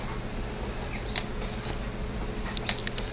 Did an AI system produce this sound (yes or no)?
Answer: no